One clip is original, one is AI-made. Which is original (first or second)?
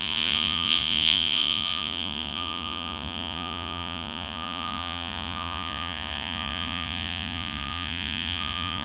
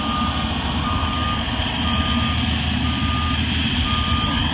second